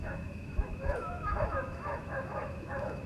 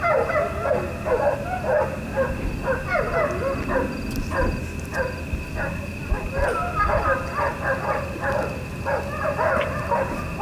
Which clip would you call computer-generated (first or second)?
first